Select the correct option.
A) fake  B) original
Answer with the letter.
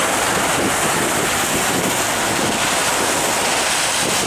B